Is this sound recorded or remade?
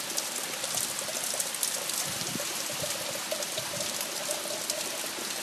remade